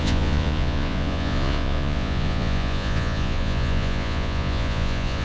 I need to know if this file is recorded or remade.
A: remade